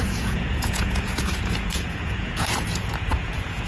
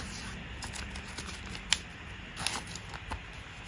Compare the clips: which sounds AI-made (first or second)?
first